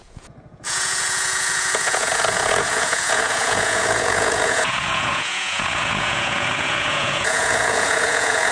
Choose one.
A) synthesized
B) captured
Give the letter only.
A